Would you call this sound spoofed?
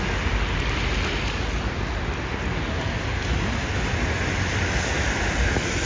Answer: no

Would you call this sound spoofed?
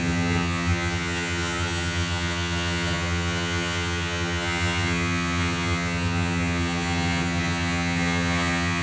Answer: yes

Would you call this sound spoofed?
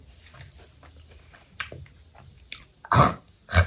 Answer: no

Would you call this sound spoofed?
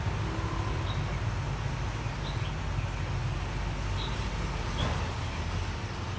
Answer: no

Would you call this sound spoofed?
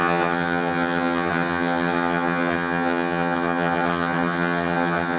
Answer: yes